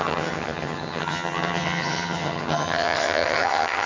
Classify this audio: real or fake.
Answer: fake